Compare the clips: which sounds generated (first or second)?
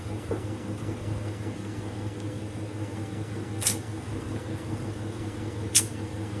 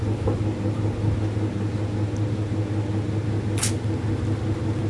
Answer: first